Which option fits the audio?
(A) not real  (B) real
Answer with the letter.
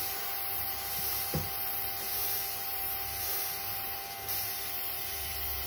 A